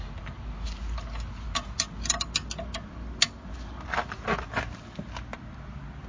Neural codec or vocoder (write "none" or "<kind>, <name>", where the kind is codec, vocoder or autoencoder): none